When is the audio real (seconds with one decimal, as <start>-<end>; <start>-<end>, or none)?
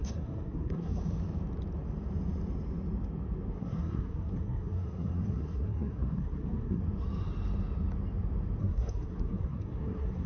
1.0-3.5; 6.8-8.6